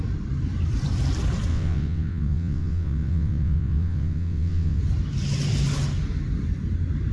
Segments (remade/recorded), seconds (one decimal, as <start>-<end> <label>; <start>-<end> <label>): 0.0-1.5 recorded; 1.5-4.8 remade; 4.8-7.1 recorded